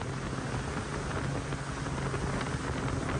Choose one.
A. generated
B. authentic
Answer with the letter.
B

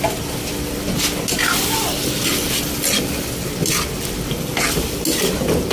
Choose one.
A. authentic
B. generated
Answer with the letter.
A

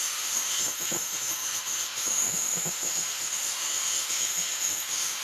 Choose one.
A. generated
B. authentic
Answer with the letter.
A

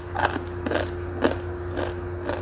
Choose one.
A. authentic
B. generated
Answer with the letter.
A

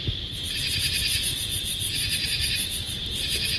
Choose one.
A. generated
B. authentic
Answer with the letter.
B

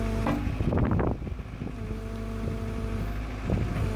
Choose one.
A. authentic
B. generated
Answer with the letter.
A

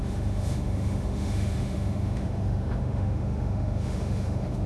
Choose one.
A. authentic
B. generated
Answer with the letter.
B